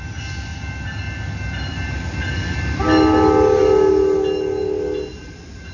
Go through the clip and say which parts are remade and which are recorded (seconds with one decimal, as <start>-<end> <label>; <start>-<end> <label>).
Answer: 0.0-5.7 recorded